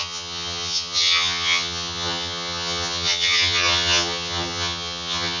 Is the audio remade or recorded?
remade